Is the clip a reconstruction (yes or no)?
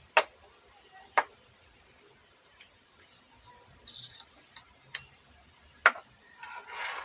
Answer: no